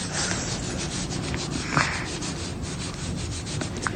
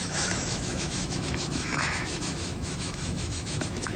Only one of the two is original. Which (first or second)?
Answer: first